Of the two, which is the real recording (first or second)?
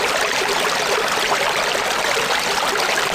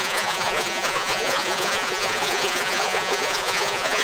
first